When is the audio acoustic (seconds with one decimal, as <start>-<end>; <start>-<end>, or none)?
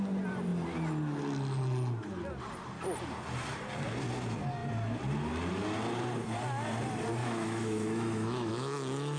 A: 0.0-7.2